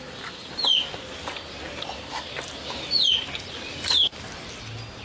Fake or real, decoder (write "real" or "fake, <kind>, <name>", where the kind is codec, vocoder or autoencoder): real